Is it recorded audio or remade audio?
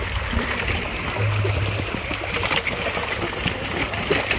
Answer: recorded